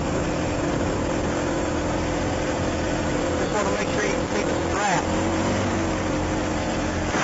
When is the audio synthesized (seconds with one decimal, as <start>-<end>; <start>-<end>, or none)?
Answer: 0.0-4.1; 5.0-7.2